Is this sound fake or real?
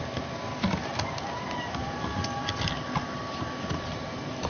real